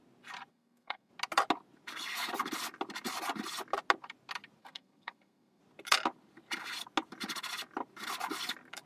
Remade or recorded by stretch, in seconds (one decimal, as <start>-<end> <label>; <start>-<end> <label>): 0.0-0.5 recorded; 0.5-1.1 remade; 1.1-4.6 recorded; 4.6-5.6 remade; 5.6-8.9 recorded